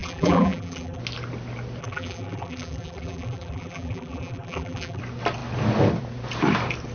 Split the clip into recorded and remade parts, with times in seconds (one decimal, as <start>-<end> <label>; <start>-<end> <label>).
0.0-1.0 remade; 1.0-1.8 recorded; 1.8-5.0 remade; 5.0-6.9 recorded